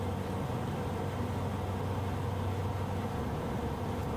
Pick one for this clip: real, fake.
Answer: real